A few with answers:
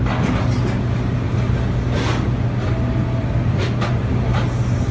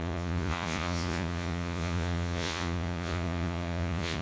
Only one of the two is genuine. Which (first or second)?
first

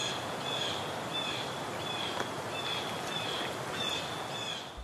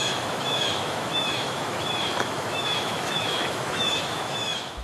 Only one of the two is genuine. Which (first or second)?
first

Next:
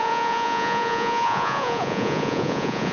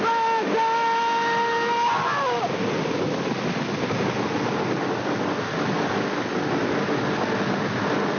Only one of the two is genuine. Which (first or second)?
second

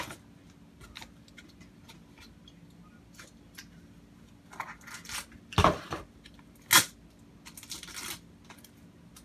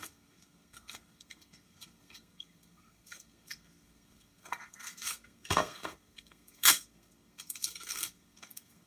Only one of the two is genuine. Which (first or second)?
first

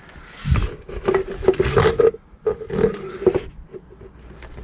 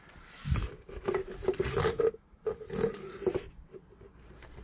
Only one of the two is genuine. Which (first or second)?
first